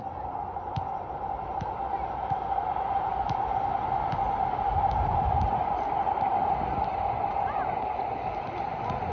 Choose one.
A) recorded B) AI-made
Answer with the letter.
A